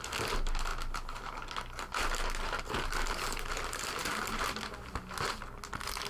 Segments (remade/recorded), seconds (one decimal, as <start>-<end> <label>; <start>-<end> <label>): 0.0-6.1 recorded